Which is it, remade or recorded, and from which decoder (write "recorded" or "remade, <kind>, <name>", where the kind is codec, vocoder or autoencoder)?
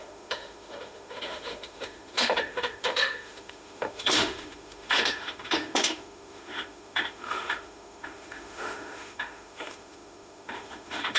remade, autoencoder, DAC-VAE